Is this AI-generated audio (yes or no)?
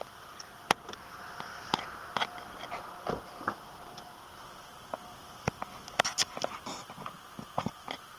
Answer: no